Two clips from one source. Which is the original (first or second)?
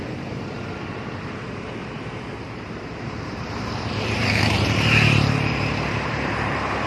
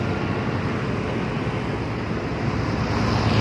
second